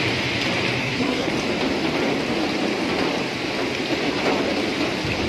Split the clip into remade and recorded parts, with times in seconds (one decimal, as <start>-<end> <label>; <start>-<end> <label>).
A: 0.0-0.8 recorded; 0.8-1.3 remade; 1.3-5.3 recorded

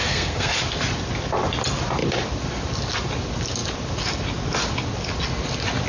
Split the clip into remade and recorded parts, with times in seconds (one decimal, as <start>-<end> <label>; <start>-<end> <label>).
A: 0.0-0.6 remade; 0.6-5.9 recorded